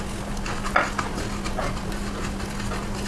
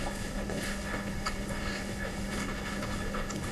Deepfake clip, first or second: second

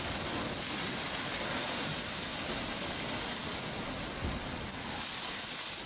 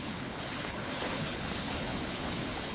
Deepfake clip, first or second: second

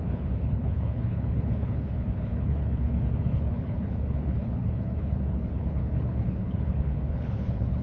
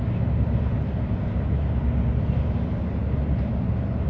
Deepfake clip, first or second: first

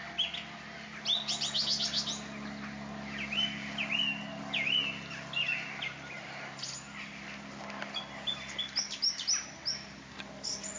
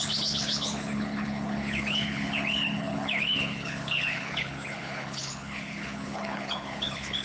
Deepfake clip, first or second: second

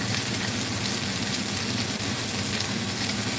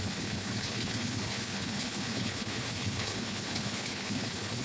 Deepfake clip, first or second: second